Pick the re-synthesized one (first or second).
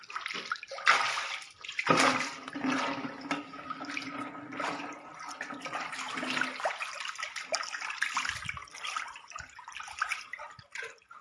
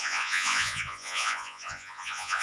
second